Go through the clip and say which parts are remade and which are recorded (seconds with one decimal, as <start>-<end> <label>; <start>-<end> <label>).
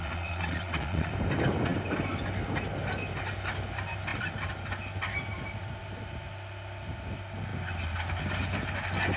0.0-1.1 remade; 1.1-9.2 recorded